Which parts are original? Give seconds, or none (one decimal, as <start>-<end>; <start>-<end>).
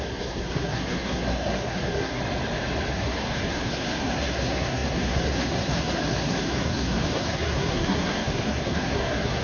2.2-2.9